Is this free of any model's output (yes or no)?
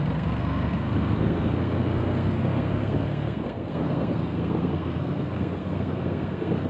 no